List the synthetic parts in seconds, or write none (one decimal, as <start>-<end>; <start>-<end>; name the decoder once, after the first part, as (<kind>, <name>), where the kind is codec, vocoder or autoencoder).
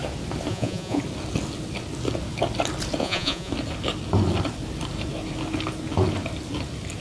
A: 0.5-1.0 (vocoder, Vocos); 3.0-3.5